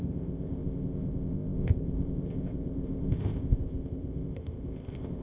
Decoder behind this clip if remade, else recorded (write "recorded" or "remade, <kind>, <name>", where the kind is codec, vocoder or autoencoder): remade, codec, ZipCodec